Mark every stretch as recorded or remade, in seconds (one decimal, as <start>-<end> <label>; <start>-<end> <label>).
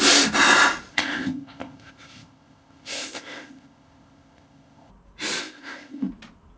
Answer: 0.0-0.9 recorded; 0.9-4.9 remade; 4.9-5.4 recorded; 5.4-6.1 remade; 6.1-6.6 recorded